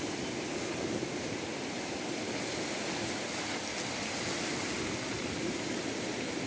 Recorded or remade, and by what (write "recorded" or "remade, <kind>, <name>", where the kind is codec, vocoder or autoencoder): recorded